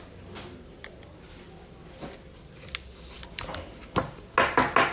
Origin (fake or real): real